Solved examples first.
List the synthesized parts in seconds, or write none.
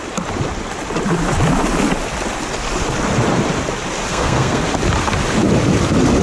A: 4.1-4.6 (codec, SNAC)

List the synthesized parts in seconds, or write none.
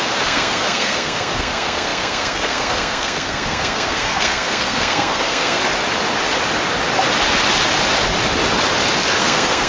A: 0.0-5.6 (codec, SNAC); 9.2-9.7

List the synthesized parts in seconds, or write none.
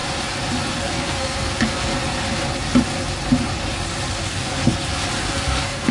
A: 0.8-1.9 (codec, SNAC); 4.1-4.6; 5.2-5.9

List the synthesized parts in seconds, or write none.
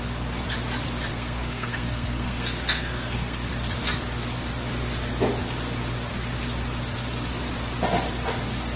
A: 1.1-3.5 (codec, SNAC)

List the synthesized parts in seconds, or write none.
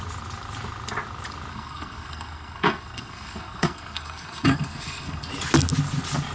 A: 1.5-5.3 (codec, SNAC)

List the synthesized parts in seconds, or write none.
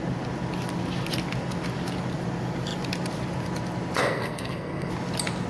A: 4.0-4.9 (codec, SNAC)